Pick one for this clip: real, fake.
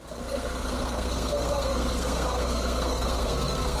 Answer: fake